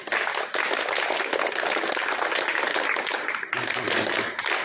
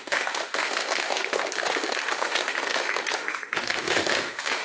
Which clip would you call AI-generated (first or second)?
second